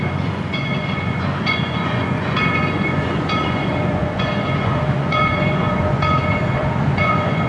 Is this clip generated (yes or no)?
yes